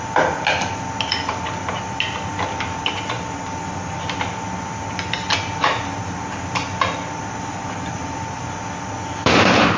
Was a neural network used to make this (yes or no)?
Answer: no